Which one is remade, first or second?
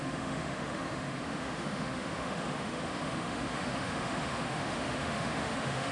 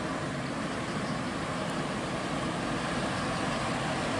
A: first